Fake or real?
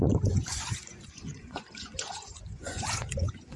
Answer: fake